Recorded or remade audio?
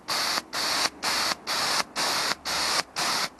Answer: recorded